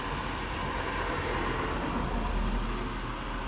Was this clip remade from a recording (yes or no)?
no